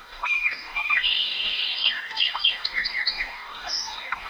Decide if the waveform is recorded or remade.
remade